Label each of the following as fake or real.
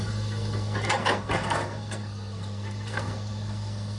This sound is fake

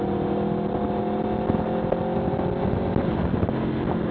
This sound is real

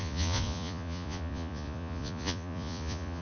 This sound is fake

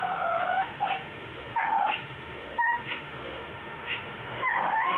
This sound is fake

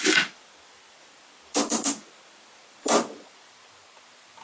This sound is fake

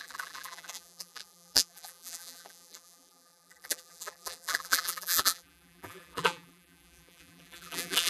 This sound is fake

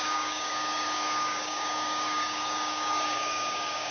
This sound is fake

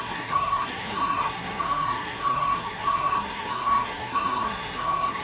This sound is fake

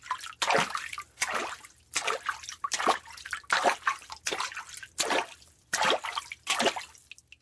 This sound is real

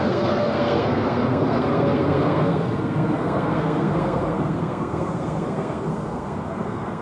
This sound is fake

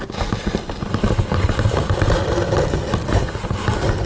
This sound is real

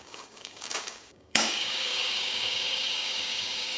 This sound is fake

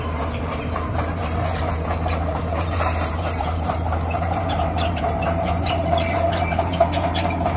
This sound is fake